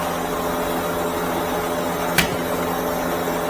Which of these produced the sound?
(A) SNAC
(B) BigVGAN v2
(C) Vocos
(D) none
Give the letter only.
D